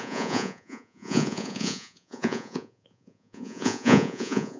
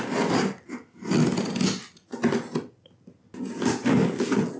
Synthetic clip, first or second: first